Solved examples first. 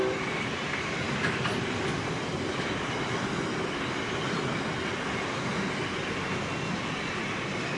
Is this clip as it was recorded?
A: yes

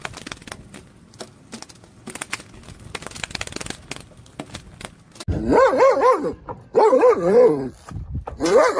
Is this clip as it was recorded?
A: yes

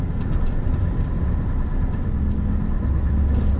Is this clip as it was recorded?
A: yes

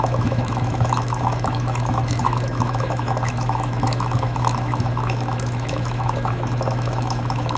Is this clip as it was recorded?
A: no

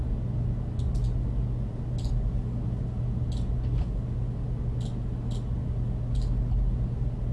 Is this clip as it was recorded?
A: yes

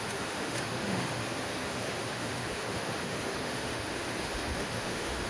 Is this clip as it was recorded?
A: no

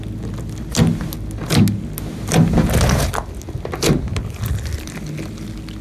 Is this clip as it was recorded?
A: yes